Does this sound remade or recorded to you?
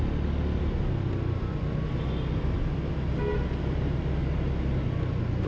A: recorded